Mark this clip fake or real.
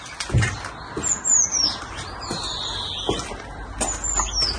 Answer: real